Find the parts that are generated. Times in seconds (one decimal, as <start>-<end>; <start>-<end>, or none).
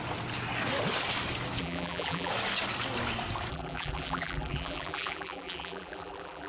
1.6-2.3; 3.5-6.5